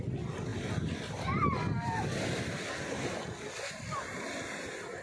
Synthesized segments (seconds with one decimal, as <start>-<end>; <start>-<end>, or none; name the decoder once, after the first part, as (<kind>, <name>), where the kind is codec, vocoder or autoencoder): none